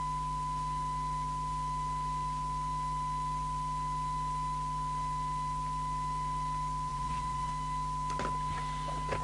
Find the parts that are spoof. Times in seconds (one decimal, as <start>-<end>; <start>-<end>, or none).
6.9-7.5